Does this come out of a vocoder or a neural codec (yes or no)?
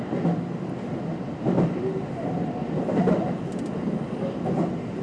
no